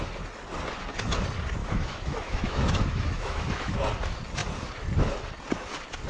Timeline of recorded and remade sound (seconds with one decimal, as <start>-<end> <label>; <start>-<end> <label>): 0.0-1.6 recorded; 1.6-3.8 remade; 3.8-6.1 recorded